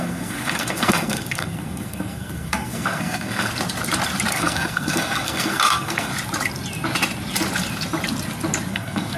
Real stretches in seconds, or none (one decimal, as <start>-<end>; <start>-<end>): 3.5-4.3; 6.1-8.7